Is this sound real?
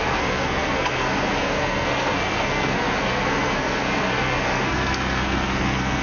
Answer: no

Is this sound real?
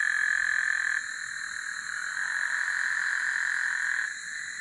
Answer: yes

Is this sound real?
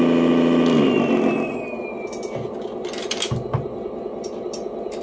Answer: yes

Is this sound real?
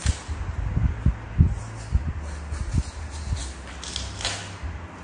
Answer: yes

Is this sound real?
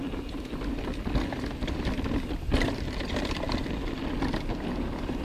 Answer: yes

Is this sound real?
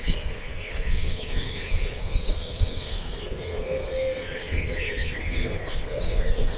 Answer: no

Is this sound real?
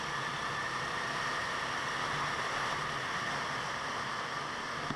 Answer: yes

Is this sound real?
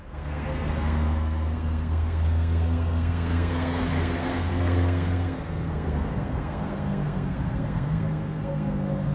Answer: no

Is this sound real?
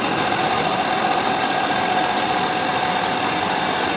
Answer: yes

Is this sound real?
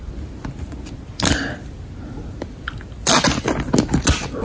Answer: yes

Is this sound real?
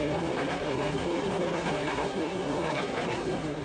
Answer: no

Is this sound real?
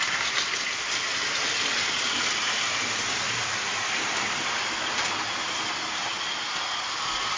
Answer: yes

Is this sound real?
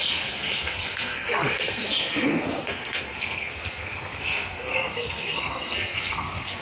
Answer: no